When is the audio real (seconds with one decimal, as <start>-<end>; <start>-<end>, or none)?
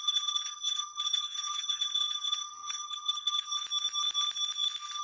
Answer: 3.5-5.0